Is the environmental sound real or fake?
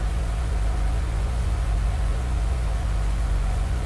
fake